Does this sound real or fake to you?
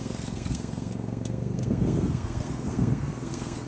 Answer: fake